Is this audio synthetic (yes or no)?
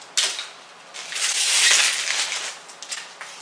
no